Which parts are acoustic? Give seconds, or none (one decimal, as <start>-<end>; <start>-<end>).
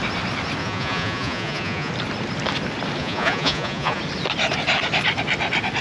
0.0-0.6; 1.9-3.0; 4.0-5.8